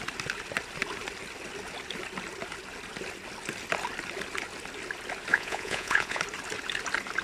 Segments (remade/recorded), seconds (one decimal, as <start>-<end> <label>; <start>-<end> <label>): 0.0-5.3 recorded; 5.3-6.2 remade; 6.2-7.2 recorded